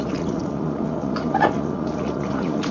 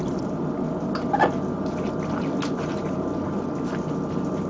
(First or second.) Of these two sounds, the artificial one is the first